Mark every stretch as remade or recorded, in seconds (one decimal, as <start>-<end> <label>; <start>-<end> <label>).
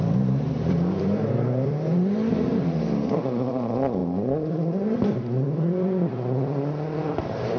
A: 0.0-2.5 remade; 2.5-3.5 recorded; 3.5-4.0 remade; 4.0-4.5 recorded; 4.5-7.6 remade